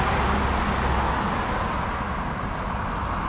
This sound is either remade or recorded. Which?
recorded